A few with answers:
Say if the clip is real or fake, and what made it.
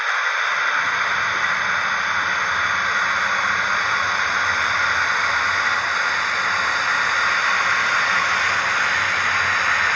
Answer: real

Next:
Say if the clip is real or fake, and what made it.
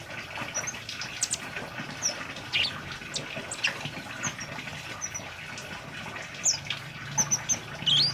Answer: real